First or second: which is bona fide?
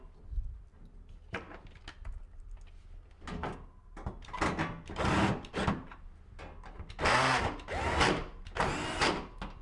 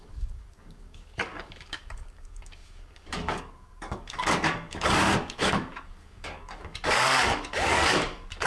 first